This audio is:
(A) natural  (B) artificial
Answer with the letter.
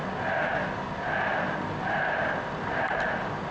A